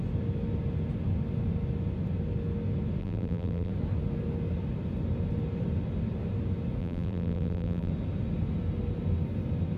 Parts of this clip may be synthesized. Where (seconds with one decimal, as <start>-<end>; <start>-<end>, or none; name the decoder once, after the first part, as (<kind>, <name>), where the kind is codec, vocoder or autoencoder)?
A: 3.0-3.7 (vocoder, BigVGAN v2); 6.8-7.9